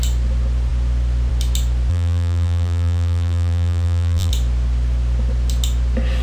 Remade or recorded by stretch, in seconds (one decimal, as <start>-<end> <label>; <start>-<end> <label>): 0.0-1.9 recorded; 1.9-4.3 remade; 4.3-6.2 recorded

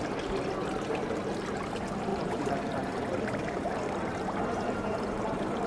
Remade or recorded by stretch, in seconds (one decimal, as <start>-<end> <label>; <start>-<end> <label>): 0.0-2.1 recorded; 2.1-5.7 remade

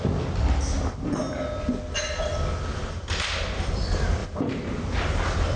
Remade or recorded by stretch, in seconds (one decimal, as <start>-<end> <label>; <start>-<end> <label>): 0.0-4.2 recorded; 4.2-5.0 remade; 5.0-5.6 recorded

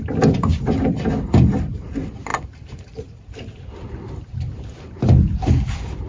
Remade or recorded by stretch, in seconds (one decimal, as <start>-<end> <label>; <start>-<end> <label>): 0.0-0.5 recorded; 0.5-1.0 remade; 1.0-2.3 recorded; 2.3-6.1 remade

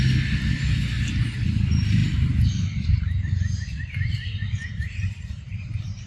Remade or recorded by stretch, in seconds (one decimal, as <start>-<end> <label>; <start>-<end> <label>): 0.0-2.0 recorded; 2.0-6.1 remade